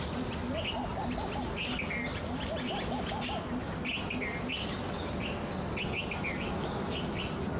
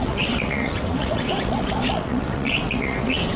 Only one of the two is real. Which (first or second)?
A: first